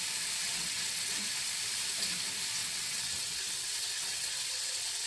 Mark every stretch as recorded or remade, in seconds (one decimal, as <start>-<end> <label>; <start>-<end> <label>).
0.0-0.4 recorded; 0.4-1.5 remade; 1.5-2.6 recorded; 2.6-5.1 remade